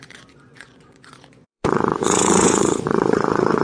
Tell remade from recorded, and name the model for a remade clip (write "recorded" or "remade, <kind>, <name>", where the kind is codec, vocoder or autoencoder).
remade, vocoder, Vocos